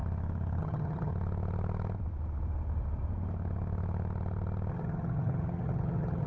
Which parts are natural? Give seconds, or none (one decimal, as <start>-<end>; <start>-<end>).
0.0-0.6; 1.1-4.7